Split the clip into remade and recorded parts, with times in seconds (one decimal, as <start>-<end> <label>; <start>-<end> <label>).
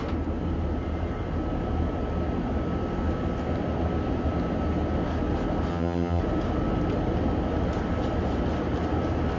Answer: 0.0-5.7 recorded; 5.7-6.2 remade; 6.2-9.4 recorded